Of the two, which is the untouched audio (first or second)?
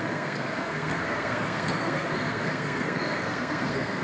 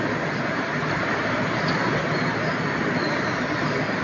second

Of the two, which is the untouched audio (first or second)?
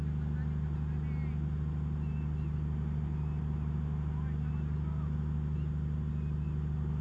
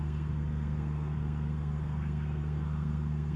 first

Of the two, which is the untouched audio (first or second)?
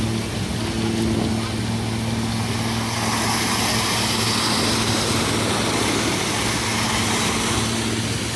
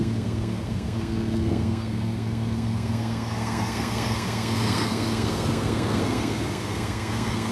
first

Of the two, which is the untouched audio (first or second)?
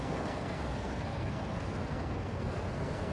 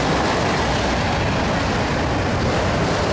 second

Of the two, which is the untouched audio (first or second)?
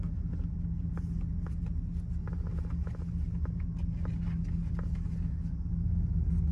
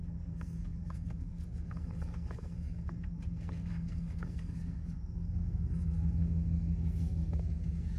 first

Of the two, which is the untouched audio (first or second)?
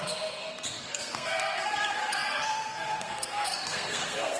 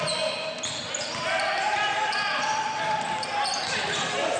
second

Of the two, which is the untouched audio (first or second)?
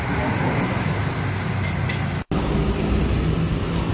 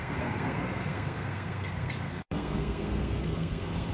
first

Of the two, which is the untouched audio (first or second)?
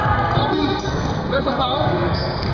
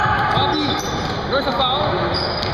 second